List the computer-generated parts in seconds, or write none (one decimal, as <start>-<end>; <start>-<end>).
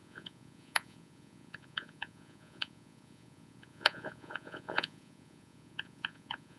0.0-6.6